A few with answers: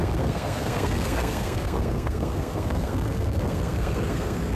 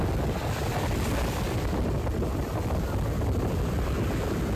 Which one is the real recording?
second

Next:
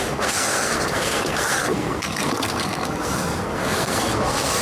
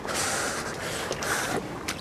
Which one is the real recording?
second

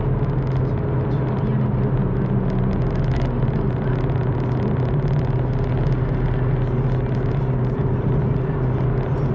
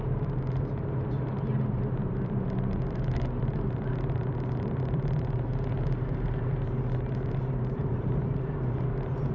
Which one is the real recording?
first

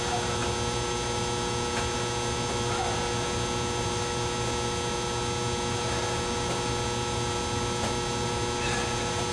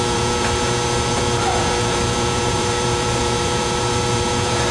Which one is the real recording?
first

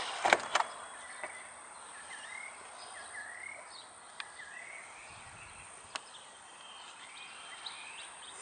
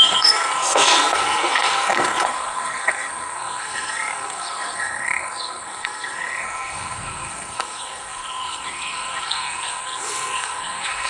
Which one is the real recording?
first